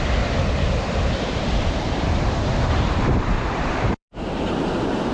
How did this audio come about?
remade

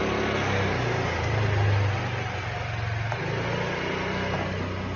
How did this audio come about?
recorded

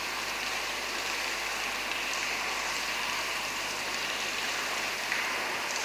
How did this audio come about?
recorded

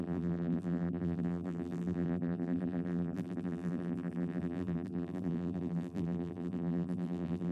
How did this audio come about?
remade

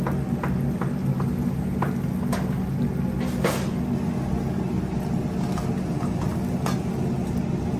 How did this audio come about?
recorded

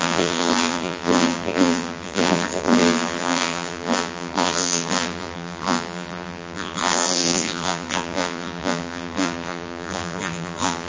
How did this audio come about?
remade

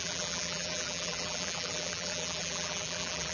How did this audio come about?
remade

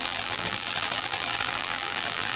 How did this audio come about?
remade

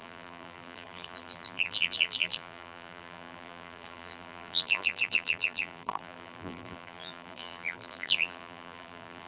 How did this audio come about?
remade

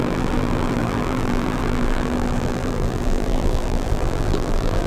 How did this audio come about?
remade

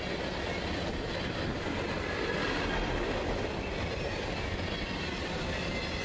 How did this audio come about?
recorded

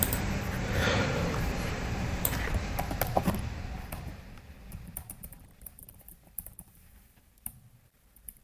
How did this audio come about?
remade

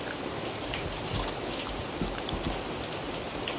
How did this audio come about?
recorded